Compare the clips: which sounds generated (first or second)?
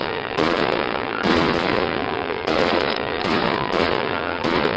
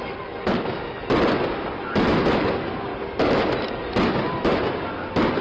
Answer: first